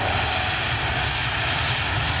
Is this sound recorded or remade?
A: recorded